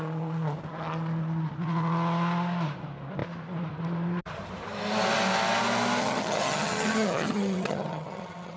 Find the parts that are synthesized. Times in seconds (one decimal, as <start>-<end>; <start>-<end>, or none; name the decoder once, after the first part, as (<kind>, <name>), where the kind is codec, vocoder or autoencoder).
6.0-8.6 (vocoder, HiFi-GAN)